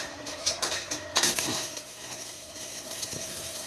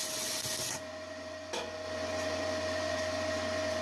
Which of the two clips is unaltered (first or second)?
second